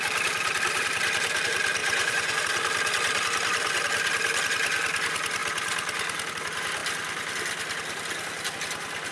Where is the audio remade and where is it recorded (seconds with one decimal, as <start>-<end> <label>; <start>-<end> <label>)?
0.0-1.8 recorded; 1.8-2.4 remade; 2.4-9.1 recorded